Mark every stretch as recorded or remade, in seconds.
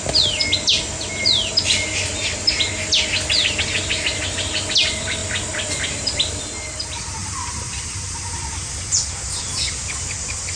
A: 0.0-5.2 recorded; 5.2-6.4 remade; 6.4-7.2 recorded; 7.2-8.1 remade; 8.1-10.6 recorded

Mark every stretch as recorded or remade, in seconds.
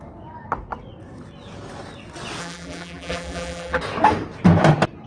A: 0.0-2.4 recorded; 2.4-3.8 remade; 3.8-5.1 recorded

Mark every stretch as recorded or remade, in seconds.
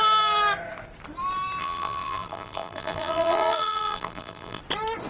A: 0.0-1.6 recorded; 1.6-4.6 remade; 4.6-5.1 recorded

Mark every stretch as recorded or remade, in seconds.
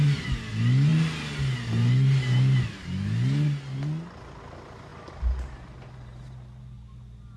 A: 0.0-7.4 recorded